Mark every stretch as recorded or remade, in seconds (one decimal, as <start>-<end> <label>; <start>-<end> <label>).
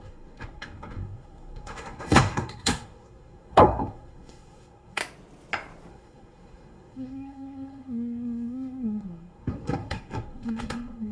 0.0-5.0 remade; 5.0-5.9 recorded; 5.9-11.1 remade